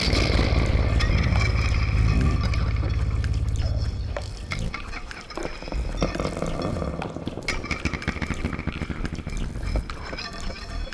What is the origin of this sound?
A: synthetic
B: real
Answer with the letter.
B